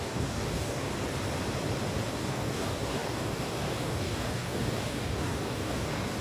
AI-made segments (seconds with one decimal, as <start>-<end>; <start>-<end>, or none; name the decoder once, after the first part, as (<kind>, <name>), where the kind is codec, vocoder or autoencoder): 0.0-0.9 (codec, DAC); 2.1-6.2